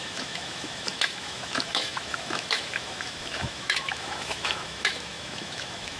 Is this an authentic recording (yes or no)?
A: no